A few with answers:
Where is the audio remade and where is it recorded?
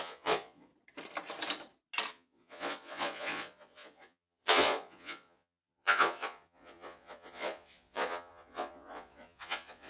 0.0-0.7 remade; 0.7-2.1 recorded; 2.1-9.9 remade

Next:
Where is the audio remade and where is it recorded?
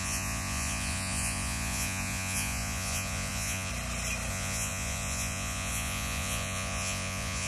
0.0-3.7 remade; 3.7-4.3 recorded; 4.3-7.5 remade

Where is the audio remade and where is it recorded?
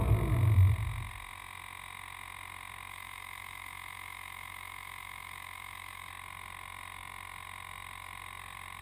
0.0-2.9 recorded; 2.9-6.1 remade; 6.1-8.8 recorded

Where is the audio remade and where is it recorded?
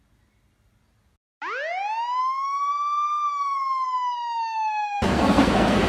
0.0-2.2 recorded; 2.2-5.9 remade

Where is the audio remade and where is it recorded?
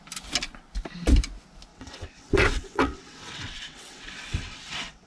0.0-1.7 recorded; 1.7-5.1 remade